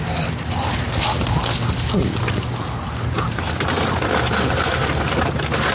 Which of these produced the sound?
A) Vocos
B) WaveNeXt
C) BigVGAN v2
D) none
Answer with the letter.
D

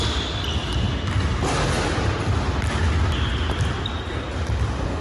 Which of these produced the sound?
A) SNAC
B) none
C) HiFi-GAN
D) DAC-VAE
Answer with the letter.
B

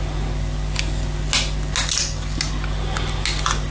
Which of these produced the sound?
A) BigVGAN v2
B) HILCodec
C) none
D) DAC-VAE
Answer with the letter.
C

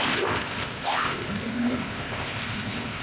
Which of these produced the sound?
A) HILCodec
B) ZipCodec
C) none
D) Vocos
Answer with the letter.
B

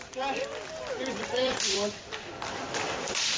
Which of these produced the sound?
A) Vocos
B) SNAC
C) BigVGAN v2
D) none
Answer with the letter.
C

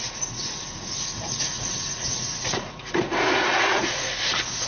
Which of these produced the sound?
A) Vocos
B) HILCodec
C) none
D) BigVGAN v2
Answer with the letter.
A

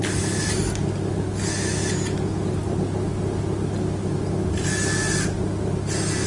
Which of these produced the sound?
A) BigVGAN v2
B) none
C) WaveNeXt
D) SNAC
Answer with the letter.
B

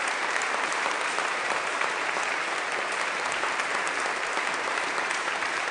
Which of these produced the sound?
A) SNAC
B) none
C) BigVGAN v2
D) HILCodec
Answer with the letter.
C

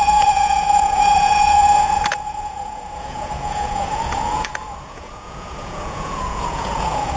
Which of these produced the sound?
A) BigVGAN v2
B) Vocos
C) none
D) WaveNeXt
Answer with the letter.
B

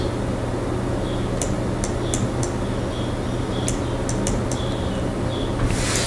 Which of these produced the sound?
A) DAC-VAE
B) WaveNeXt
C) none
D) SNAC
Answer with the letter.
C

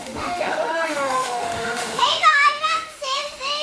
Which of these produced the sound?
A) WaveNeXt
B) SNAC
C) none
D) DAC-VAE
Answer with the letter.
D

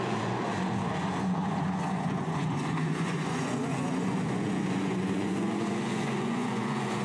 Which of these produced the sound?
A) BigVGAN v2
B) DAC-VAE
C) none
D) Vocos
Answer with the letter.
D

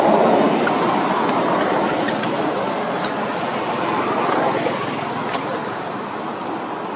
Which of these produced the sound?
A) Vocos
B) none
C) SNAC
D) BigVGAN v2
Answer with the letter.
B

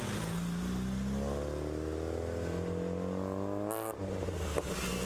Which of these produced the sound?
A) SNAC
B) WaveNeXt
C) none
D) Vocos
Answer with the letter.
C